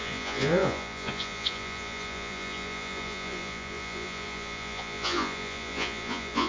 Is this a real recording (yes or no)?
no